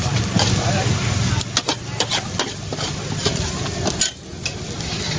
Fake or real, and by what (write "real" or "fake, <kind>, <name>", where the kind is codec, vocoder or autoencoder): real